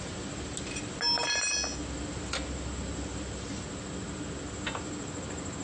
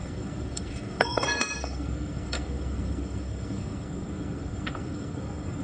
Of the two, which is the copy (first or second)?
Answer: second